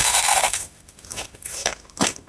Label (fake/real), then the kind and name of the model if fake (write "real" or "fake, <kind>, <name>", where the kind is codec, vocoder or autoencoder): fake, autoencoder, DAC-VAE